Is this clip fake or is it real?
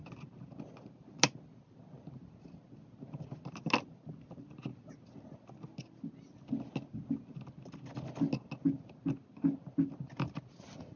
real